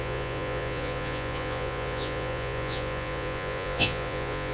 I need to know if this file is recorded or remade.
remade